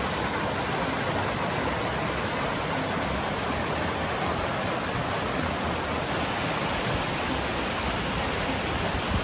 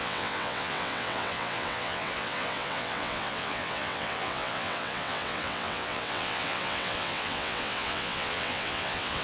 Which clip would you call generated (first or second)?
second